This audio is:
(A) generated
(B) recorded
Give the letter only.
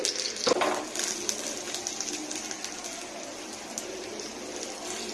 B